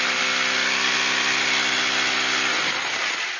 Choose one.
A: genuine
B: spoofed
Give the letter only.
A